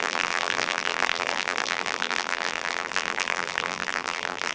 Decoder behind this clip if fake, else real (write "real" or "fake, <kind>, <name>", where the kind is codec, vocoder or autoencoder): fake, vocoder, BigVGAN v2